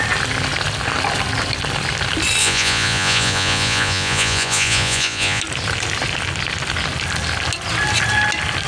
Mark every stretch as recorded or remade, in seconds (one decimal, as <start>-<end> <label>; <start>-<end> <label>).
0.0-2.4 recorded; 2.4-5.4 remade; 5.4-8.7 recorded